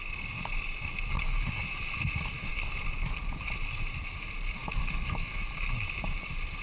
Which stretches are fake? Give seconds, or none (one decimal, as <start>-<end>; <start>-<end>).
4.6-5.4